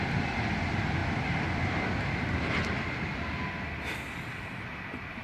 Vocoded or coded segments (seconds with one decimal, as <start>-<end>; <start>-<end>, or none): none